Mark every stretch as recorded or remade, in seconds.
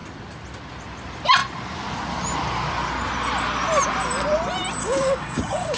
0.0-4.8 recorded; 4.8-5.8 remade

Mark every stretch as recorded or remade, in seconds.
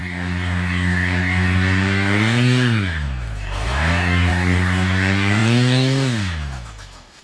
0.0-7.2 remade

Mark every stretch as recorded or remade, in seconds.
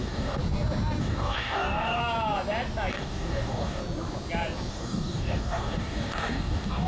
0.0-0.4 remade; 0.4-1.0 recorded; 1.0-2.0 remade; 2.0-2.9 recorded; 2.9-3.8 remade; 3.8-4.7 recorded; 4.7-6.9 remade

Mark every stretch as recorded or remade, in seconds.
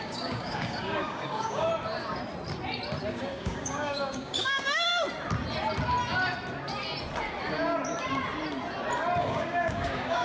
0.0-1.7 remade; 1.7-3.1 recorded; 3.1-4.9 remade; 4.9-9.2 recorded; 9.2-10.2 remade